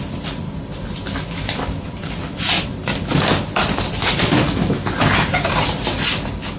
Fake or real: real